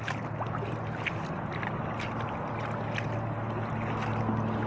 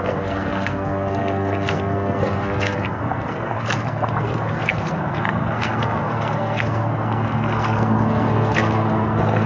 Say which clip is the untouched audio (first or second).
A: first